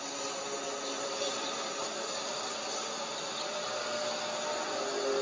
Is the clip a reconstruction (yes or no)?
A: no